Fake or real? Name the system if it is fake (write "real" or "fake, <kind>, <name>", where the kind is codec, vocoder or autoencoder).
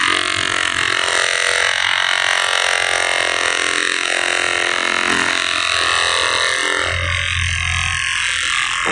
real